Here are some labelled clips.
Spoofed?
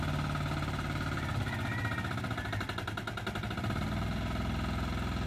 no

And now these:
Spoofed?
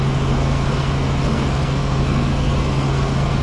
yes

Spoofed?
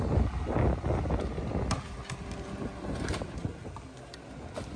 no